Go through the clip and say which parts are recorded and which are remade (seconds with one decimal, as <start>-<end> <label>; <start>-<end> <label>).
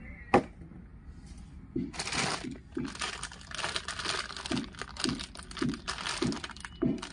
0.0-7.1 recorded